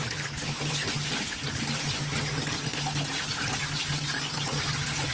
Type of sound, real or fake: real